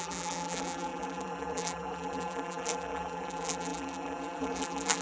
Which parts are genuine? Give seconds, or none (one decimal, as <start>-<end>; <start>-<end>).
none